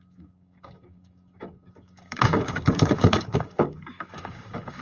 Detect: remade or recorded remade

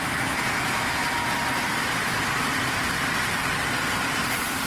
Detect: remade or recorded recorded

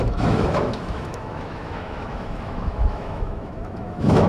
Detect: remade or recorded remade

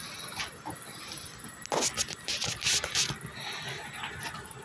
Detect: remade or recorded recorded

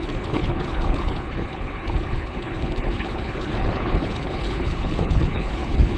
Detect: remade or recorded remade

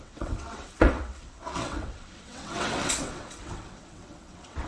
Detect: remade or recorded remade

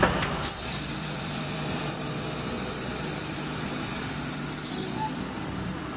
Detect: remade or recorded remade